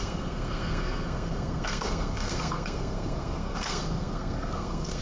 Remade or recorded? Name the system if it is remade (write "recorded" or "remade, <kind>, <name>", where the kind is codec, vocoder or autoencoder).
remade, codec, SNAC